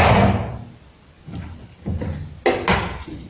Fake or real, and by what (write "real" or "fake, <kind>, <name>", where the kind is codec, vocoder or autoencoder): real